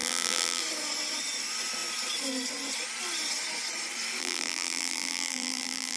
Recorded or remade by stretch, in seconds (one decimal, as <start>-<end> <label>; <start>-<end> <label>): 0.0-0.6 remade; 0.6-4.2 recorded; 4.2-6.0 remade